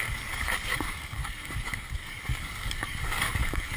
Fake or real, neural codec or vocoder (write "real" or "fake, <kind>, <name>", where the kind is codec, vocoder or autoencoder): fake, codec, DAC